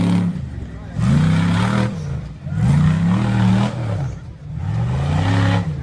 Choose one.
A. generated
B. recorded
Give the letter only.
B